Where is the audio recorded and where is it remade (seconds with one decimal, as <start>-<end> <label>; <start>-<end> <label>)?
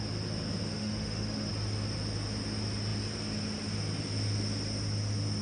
0.0-0.7 recorded; 0.7-1.5 remade; 1.5-5.4 recorded